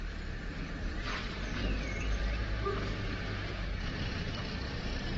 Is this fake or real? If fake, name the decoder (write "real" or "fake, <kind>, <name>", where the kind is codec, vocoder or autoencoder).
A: fake, vocoder, BigVGAN v2